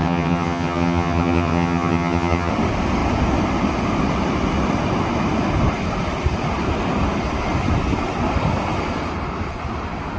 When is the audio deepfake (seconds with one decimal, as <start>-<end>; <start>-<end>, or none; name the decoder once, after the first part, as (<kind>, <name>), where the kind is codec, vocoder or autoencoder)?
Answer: 0.0-2.5 (vocoder, HiFi-GAN)

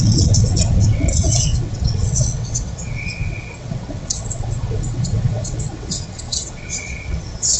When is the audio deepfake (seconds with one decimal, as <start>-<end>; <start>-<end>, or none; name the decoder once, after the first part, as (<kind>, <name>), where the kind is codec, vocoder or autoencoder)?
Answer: 0.0-7.6 (vocoder, WaveNeXt)